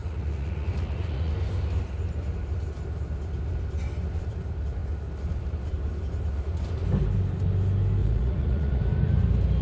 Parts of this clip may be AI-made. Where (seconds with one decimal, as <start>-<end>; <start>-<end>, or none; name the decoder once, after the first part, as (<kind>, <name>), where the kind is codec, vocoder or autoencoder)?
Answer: 0.0-1.3 (vocoder, Vocos); 8.0-8.8